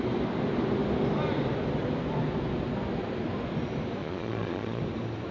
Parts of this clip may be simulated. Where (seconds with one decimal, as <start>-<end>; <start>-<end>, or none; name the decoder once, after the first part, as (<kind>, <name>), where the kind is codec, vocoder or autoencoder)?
4.0-4.8 (vocoder, Vocos)